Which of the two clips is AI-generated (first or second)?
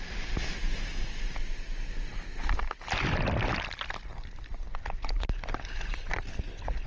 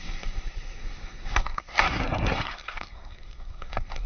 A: second